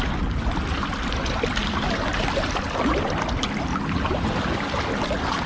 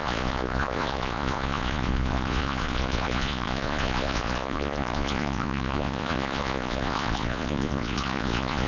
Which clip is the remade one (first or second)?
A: second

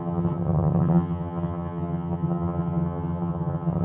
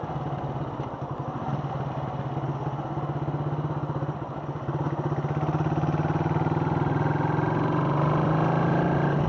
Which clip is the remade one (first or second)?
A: first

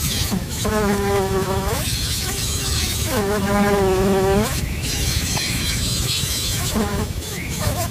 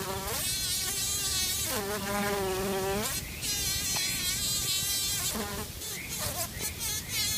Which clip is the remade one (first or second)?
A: first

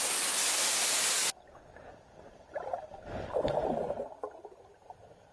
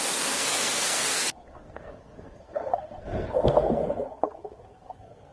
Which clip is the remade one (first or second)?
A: second